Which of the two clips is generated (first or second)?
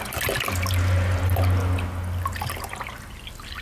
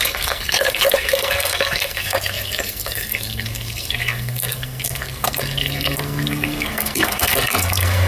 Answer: second